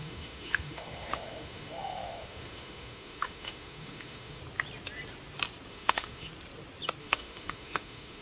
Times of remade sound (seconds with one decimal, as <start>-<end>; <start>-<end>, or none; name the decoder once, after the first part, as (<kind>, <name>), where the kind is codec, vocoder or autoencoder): 0.0-4.4 (autoencoder, DAC-VAE); 5.7-6.3; 7.0-8.2